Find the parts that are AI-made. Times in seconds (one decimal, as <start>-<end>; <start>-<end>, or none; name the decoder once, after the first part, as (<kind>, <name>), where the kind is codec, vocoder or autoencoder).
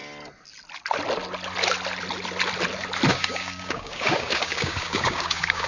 3.1-5.7 (codec, DAC)